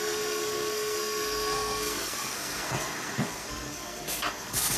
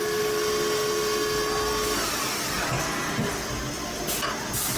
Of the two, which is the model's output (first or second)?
first